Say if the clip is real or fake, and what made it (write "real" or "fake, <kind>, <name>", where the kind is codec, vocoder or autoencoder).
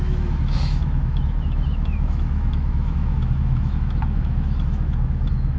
fake, autoencoder, DAC-VAE